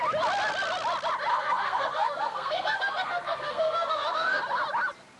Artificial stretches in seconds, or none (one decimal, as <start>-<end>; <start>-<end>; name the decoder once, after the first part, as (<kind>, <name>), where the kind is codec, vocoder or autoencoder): 1.3-4.4 (codec, SNAC)